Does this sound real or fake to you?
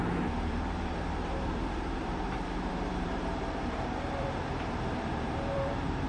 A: fake